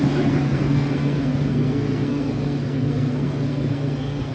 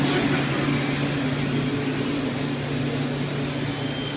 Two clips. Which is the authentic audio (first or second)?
second